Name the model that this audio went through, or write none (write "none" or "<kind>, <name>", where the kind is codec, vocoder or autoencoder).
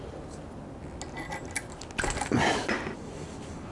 none